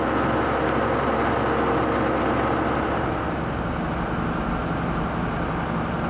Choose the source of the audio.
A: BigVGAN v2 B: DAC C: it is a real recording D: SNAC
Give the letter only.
C